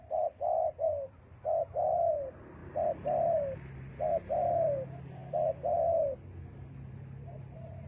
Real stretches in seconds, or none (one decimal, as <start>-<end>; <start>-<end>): 0.0-2.6; 3.3-5.2; 7.4-7.9